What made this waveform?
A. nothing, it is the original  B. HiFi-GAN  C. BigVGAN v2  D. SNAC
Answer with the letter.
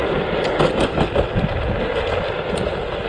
A